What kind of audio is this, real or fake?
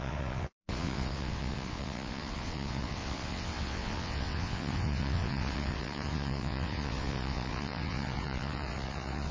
fake